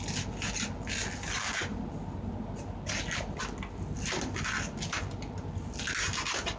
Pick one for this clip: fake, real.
real